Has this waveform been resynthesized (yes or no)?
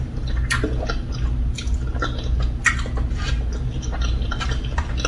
no